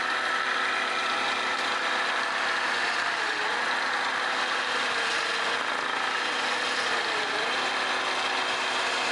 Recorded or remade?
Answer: recorded